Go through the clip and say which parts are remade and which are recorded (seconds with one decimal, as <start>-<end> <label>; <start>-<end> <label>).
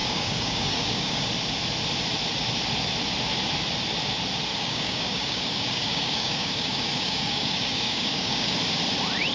0.0-1.3 remade; 1.3-4.5 recorded; 4.5-8.5 remade; 8.5-9.3 recorded